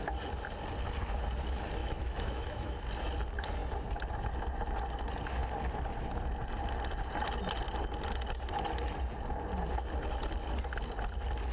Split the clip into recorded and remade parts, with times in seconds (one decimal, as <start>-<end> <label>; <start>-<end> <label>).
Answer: 0.0-1.8 recorded; 1.8-2.8 remade; 2.8-11.5 recorded